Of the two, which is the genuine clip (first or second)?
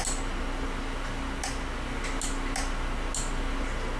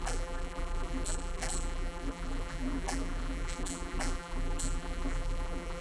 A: first